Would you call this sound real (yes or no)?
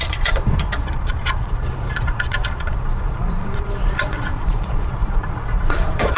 no